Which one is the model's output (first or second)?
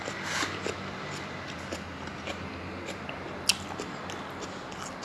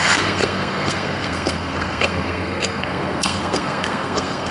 second